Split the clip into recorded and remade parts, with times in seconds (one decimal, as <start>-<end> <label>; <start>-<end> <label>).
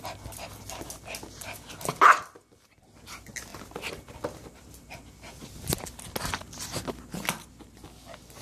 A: 0.0-8.4 recorded